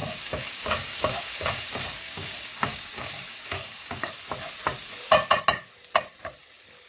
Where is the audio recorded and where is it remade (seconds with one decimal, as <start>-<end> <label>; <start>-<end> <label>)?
0.0-4.1 remade; 4.1-6.9 recorded